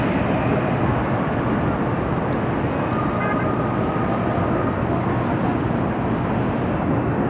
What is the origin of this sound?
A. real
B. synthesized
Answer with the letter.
A